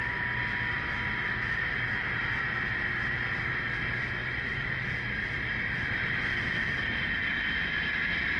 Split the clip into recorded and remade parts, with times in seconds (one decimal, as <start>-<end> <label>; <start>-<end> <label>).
0.0-4.2 recorded; 4.2-7.0 remade; 7.0-8.4 recorded